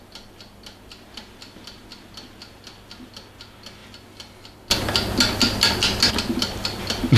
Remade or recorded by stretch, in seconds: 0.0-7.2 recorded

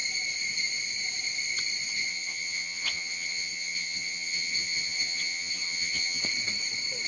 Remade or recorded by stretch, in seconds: 0.0-2.1 recorded; 2.1-6.2 remade; 6.2-7.1 recorded

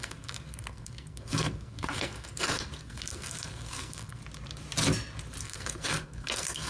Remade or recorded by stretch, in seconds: 0.0-4.2 remade; 4.2-5.4 recorded; 5.4-6.7 remade

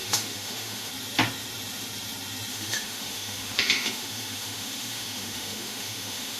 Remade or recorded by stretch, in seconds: 0.0-0.9 remade; 0.9-2.5 recorded; 2.5-6.4 remade

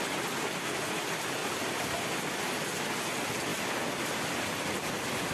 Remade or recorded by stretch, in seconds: 0.0-1.4 recorded; 1.4-3.1 remade; 3.1-3.5 recorded; 3.5-5.3 remade

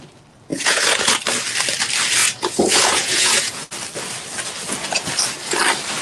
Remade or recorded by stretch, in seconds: 0.0-0.5 recorded; 0.5-1.2 remade; 1.2-2.2 recorded; 2.2-3.7 remade; 3.7-6.0 recorded

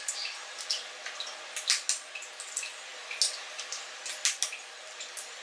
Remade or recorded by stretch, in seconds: 0.0-5.4 recorded

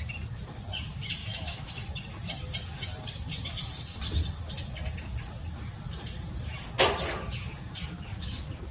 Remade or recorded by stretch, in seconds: 0.0-1.2 recorded; 1.2-1.8 remade; 1.8-8.7 recorded